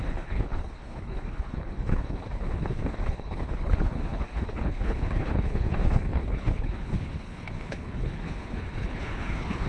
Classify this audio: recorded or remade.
remade